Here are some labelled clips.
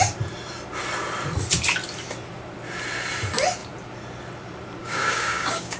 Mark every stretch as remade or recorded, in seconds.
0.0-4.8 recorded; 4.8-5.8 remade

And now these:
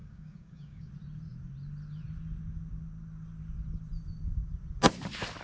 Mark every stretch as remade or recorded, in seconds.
0.0-0.9 remade; 0.9-5.4 recorded